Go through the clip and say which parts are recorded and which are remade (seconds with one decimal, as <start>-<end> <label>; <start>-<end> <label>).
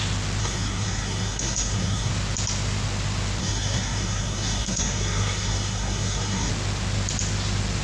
0.0-0.4 recorded; 0.4-2.1 remade; 2.1-3.4 recorded; 3.4-6.5 remade; 6.5-7.8 recorded